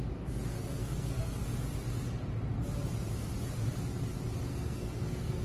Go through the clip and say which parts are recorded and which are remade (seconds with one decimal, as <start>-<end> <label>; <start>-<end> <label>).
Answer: 0.0-0.5 recorded; 0.5-1.4 remade; 1.4-4.5 recorded; 4.5-5.4 remade